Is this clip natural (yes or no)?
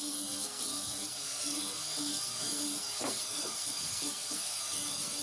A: no